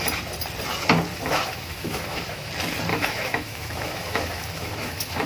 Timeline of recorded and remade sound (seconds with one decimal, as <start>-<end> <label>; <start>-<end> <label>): 0.0-1.1 recorded; 1.1-2.5 remade; 2.5-2.9 recorded; 2.9-5.3 remade